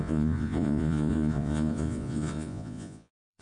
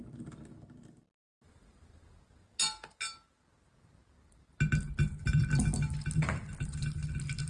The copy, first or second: first